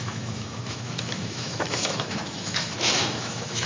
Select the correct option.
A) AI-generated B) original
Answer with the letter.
A